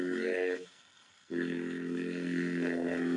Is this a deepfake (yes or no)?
yes